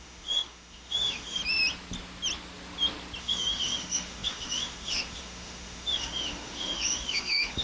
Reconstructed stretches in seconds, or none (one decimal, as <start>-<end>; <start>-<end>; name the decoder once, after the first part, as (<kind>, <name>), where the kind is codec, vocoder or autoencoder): 0.0-1.4 (autoencoder, DAC-VAE); 3.2-7.6